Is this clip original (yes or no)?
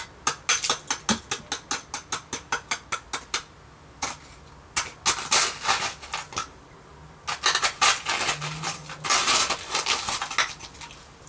yes